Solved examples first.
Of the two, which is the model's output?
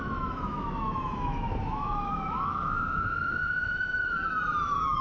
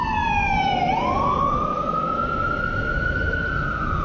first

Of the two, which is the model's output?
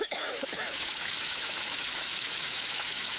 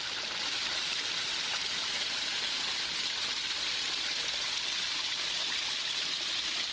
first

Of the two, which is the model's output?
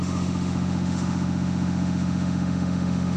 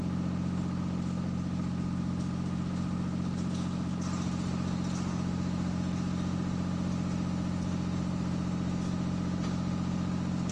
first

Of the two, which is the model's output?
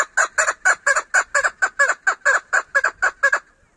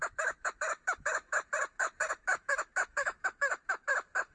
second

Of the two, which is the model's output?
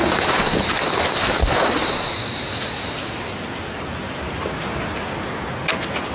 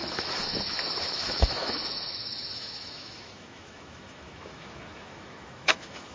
second